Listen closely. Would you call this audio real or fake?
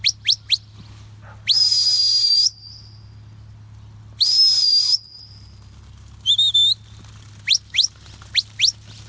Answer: real